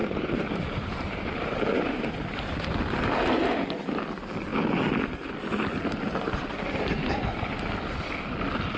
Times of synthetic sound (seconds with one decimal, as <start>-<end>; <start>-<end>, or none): 0.0-2.6